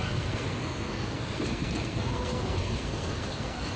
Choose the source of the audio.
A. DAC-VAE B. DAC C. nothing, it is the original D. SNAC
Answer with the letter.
D